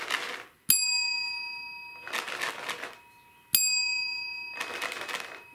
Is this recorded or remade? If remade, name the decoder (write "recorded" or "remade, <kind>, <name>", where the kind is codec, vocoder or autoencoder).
recorded